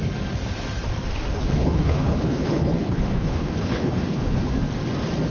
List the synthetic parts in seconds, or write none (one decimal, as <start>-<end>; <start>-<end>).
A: 1.3-4.5